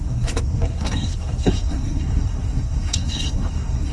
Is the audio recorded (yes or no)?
no